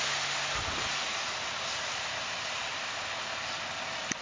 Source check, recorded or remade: recorded